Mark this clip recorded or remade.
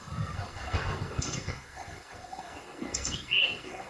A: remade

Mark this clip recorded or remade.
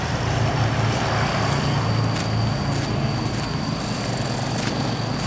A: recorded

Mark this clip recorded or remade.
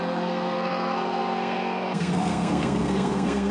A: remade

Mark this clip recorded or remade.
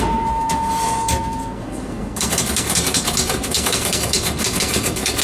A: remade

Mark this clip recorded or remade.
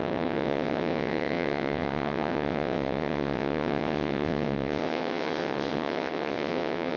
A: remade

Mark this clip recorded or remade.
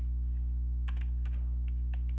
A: recorded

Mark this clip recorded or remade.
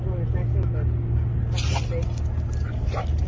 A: recorded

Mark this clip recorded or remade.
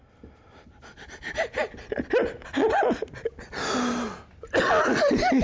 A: recorded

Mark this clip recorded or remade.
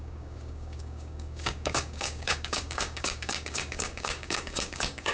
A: remade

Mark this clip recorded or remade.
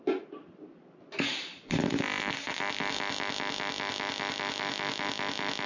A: recorded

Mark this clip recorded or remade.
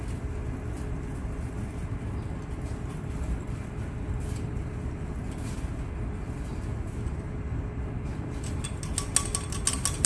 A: recorded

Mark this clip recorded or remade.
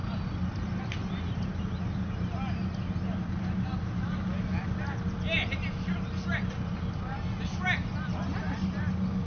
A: recorded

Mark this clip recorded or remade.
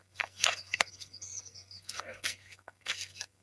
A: remade